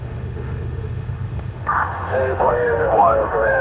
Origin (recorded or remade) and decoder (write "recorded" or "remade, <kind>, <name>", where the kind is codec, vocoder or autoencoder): remade, autoencoder, DAC-VAE